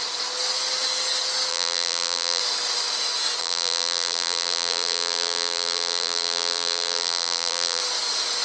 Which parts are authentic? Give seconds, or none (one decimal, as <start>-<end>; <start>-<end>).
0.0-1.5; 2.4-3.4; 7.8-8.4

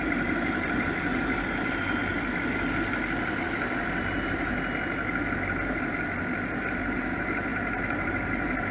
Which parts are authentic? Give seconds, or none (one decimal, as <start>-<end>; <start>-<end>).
2.0-6.5

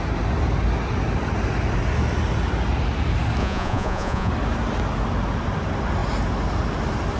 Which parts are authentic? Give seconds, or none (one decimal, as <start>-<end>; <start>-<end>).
0.0-3.4; 4.3-7.2